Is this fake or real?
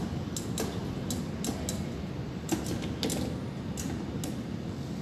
real